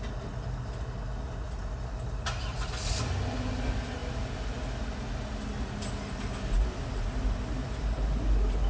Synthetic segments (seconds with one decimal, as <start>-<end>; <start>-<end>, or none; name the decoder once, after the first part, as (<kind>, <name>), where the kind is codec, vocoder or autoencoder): none